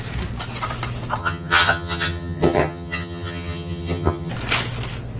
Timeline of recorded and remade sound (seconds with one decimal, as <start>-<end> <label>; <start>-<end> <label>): 0.0-1.2 recorded; 1.2-4.3 remade; 4.3-5.2 recorded

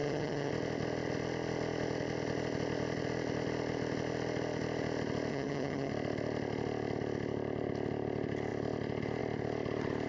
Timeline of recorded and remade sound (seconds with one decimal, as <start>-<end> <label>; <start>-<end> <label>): 0.0-0.5 remade; 0.5-5.3 recorded; 5.3-5.9 remade; 5.9-10.1 recorded